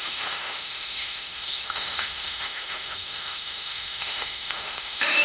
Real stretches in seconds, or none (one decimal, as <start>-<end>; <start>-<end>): none